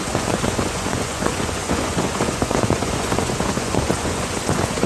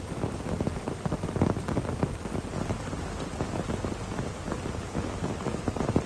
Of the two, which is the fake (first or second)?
first